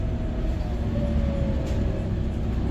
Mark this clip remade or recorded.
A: recorded